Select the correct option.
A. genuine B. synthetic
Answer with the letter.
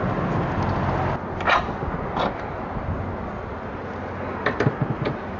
A